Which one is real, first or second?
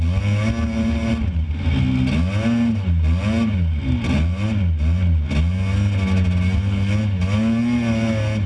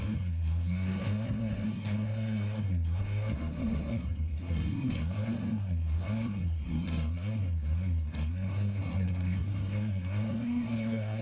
first